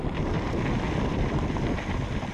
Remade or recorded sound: recorded